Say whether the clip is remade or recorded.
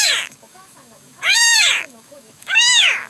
remade